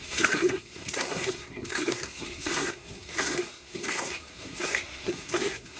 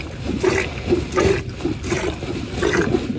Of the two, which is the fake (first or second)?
first